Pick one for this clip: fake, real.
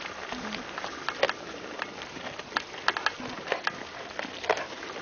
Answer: real